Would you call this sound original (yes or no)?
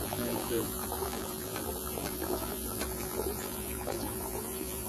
no